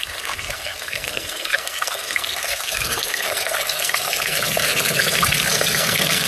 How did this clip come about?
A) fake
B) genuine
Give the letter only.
A